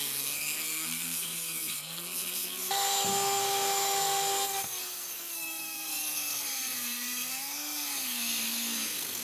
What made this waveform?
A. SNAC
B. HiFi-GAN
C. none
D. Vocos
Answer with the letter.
A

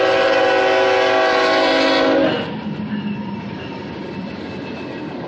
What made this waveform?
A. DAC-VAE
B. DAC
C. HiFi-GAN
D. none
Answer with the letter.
D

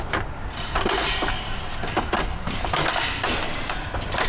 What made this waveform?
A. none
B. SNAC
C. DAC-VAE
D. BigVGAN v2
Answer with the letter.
A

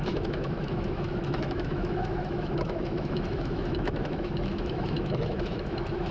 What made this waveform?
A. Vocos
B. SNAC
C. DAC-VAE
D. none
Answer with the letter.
C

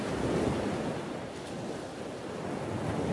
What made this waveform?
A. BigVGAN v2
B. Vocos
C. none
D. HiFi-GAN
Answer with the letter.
C